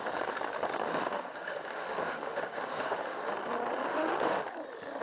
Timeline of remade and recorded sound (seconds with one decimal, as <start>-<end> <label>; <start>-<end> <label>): 0.0-0.9 recorded; 0.9-3.3 remade; 3.3-3.9 recorded; 3.9-4.4 remade; 4.4-5.0 recorded